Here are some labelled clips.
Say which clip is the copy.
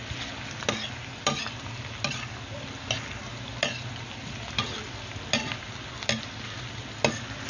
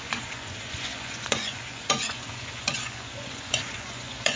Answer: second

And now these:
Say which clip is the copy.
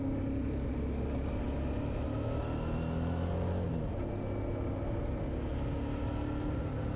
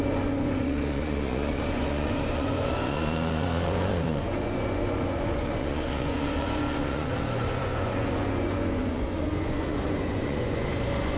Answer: second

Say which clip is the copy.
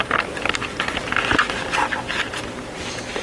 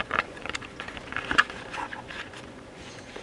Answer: second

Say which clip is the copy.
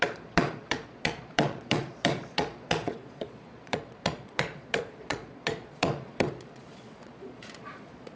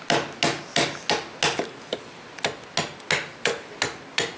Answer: first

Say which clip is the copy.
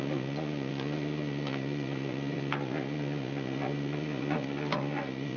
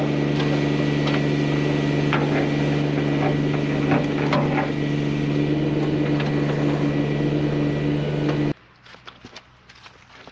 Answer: first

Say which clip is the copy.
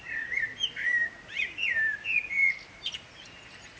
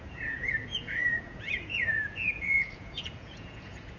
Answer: second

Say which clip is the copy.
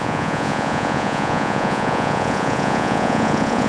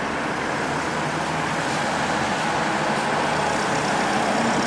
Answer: first